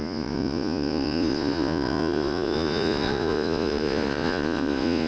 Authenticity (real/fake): fake